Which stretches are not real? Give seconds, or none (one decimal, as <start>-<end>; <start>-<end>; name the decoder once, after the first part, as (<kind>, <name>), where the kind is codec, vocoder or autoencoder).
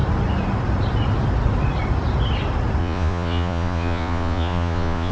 2.8-5.1 (vocoder, Vocos)